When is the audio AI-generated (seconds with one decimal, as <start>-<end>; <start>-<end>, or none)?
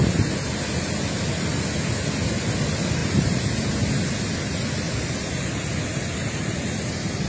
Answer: 3.0-3.8